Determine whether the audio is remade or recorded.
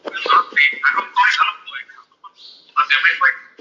recorded